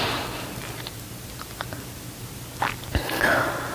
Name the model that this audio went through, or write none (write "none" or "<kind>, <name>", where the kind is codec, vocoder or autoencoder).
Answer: none